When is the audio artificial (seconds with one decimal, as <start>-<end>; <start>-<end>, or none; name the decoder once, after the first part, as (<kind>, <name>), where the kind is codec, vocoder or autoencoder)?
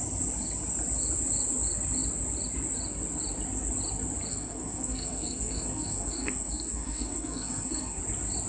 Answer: 4.3-8.0 (codec, SNAC)